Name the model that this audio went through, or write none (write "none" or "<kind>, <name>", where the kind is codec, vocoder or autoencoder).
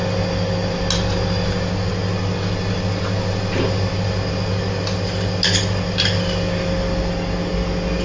none